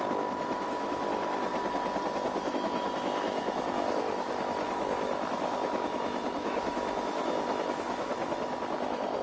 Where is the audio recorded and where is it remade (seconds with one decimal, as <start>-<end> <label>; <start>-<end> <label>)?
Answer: 0.0-1.5 remade; 1.5-2.5 recorded; 2.5-9.2 remade